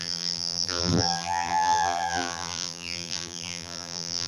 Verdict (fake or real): fake